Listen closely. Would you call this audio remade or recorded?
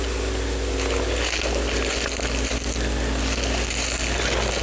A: recorded